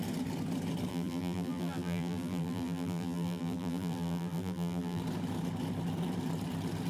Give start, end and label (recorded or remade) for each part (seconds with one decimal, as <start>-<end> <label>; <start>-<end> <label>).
0.0-0.9 recorded; 0.9-5.0 remade; 5.0-6.9 recorded